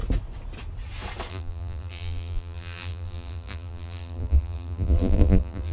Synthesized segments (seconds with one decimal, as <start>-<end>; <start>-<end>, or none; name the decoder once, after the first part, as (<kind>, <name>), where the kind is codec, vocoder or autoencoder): 1.3-5.7 (vocoder, BigVGAN v2)